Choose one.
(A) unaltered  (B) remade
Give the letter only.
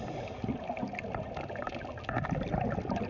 A